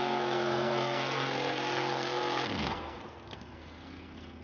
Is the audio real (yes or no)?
no